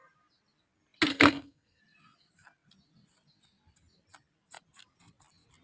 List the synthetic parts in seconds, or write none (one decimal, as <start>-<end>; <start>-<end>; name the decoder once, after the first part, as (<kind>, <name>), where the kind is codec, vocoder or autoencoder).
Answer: 1.1-1.8 (codec, SNAC)